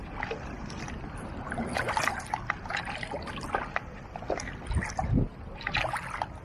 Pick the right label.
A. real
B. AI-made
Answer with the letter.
A